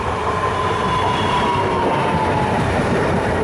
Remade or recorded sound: remade